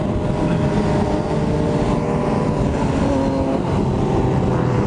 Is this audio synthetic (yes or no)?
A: no